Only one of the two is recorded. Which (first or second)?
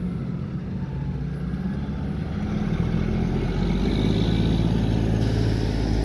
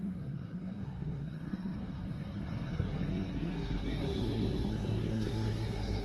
first